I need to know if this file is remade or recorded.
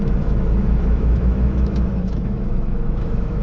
remade